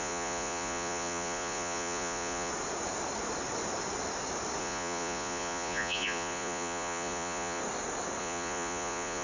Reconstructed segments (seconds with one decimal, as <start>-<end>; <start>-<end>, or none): 0.0-2.5; 4.6-7.6; 8.2-9.2